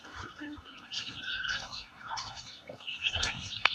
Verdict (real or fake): fake